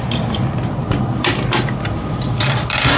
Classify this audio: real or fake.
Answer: fake